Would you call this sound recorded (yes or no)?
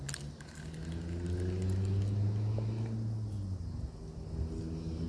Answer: yes